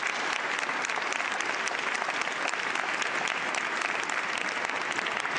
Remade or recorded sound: recorded